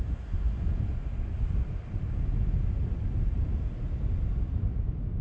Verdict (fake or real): real